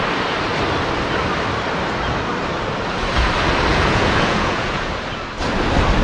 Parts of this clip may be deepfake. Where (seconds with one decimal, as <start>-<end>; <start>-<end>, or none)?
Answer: 3.7-4.9